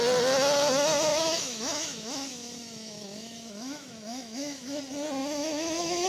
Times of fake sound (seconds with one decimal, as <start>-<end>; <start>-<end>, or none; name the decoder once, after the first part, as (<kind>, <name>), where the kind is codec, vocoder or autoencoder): 1.1-4.8 (autoencoder, DAC-VAE); 5.2-6.1